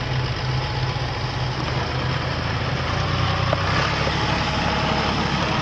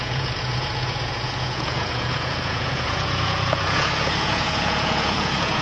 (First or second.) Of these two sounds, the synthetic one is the second